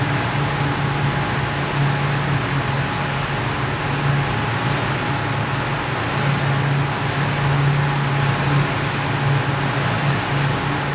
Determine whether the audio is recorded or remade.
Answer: recorded